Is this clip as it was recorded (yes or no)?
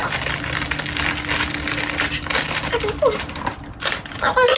yes